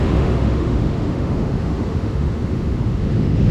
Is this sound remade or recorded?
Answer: remade